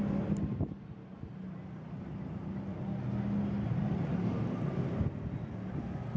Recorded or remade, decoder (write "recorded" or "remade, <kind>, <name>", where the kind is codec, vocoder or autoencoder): recorded